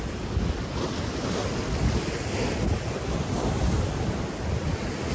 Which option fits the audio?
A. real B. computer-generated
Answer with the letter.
A